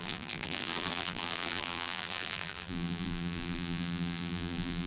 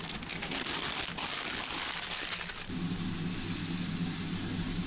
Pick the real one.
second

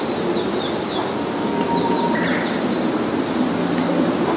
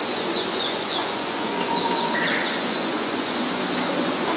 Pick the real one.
first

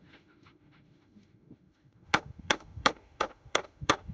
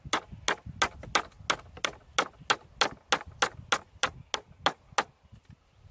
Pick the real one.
second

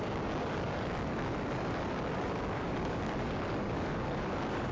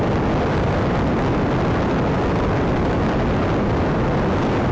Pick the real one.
second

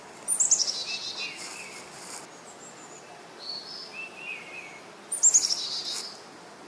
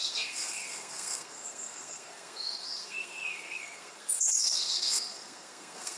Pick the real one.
first